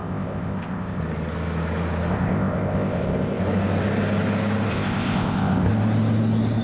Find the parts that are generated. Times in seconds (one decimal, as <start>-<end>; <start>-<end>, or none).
0.0-1.0; 2.1-3.4; 4.7-5.7